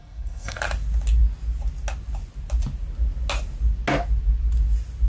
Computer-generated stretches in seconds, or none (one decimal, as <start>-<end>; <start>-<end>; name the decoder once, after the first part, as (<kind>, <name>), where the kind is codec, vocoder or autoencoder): 0.0-0.6 (codec, SNAC)